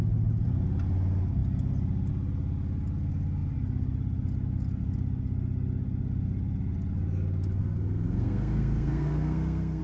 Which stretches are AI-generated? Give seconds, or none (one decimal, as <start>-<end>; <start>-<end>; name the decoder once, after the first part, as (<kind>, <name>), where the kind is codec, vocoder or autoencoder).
7.6-9.8 (codec, SNAC)